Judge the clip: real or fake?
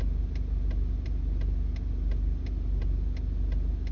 real